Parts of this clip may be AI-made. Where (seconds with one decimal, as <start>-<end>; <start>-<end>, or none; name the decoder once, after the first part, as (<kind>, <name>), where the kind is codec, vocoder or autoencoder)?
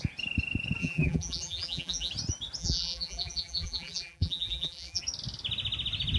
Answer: 0.8-2.1 (vocoder, BigVGAN v2); 2.6-5.0